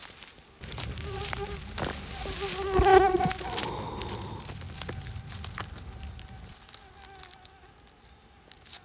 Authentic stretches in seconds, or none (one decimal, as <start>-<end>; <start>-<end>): 0.0-8.8